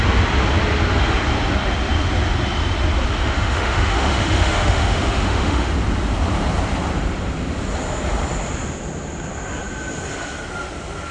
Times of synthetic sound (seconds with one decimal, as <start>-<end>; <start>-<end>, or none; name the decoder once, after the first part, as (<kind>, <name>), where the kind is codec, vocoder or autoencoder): 3.1-5.7 (autoencoder, DAC-VAE)